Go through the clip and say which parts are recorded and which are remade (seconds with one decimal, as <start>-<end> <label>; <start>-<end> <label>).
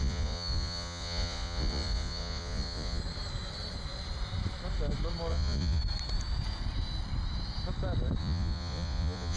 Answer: 0.0-3.0 remade; 3.0-5.3 recorded; 5.3-5.8 remade; 5.8-8.2 recorded; 8.2-9.4 remade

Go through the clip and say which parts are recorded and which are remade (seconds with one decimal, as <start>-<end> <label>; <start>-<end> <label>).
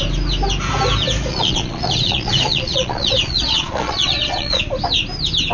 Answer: 0.0-1.3 recorded; 1.3-4.6 remade; 4.6-5.5 recorded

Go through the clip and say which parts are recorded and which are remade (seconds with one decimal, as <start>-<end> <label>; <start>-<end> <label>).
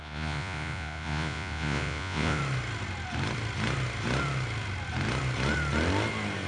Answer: 0.0-2.4 remade; 2.4-6.5 recorded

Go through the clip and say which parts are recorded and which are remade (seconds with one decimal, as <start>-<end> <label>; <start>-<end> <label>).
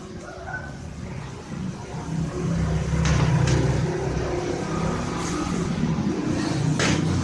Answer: 0.0-1.8 remade; 1.8-5.3 recorded; 5.3-7.2 remade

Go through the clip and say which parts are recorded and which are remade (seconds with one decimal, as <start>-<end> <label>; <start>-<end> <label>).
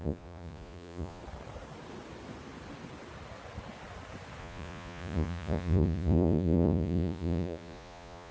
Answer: 0.0-1.2 remade; 1.2-4.4 recorded; 4.4-8.3 remade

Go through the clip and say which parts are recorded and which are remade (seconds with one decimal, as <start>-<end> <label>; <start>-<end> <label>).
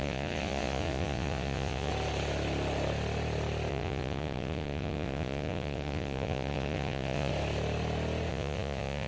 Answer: 0.0-1.9 remade; 1.9-3.7 recorded; 3.7-7.3 remade; 7.3-8.3 recorded; 8.3-9.1 remade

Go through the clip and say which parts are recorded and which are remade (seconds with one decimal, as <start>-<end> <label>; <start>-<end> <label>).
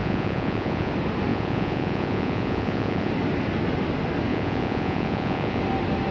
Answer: 0.0-0.9 remade; 0.9-1.3 recorded; 1.3-3.1 remade; 3.1-4.3 recorded; 4.3-5.6 remade; 5.6-6.1 recorded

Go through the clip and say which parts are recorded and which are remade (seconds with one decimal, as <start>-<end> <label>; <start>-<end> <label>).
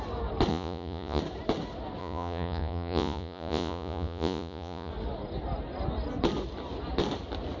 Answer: 0.0-0.5 recorded; 0.5-1.2 remade; 1.2-2.0 recorded; 2.0-4.9 remade; 4.9-7.6 recorded